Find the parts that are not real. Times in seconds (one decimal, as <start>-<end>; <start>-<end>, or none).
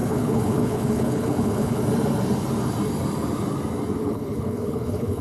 0.0-1.8; 4.0-5.2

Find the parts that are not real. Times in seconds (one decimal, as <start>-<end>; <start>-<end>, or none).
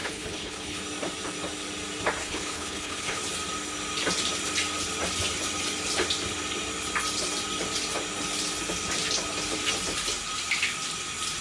0.0-0.8; 2.2-3.2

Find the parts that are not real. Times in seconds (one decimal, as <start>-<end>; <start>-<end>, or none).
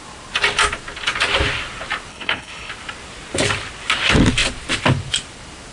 2.1-2.7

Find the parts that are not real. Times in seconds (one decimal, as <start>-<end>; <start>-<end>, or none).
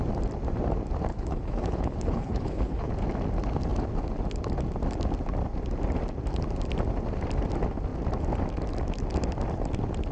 1.1-2.9